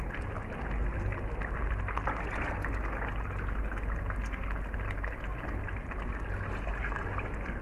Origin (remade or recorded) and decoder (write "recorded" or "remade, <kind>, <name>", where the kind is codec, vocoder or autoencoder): recorded